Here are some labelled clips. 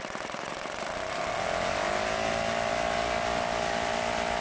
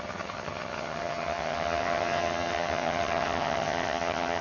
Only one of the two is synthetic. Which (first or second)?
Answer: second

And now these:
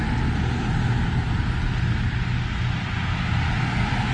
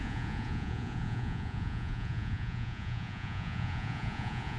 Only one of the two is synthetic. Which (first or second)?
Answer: second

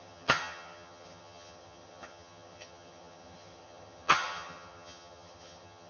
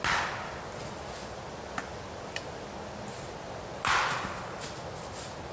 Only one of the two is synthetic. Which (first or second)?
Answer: first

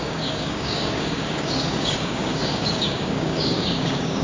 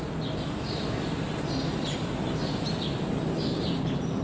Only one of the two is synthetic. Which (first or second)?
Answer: first